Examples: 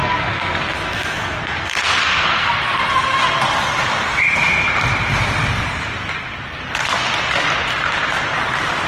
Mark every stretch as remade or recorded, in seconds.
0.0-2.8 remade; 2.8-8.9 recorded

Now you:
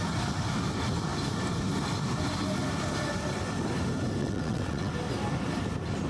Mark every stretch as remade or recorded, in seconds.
0.0-4.2 recorded; 4.2-4.9 remade; 4.9-6.1 recorded